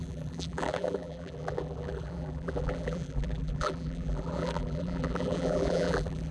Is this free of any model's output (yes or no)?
no